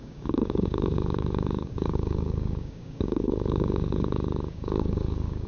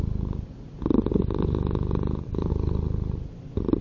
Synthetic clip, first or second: first